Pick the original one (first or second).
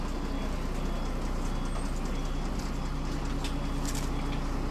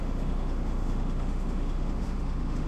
first